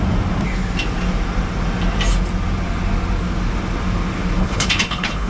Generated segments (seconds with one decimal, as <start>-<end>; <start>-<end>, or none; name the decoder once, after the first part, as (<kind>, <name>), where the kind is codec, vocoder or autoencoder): 4.4-5.3 (codec, HILCodec)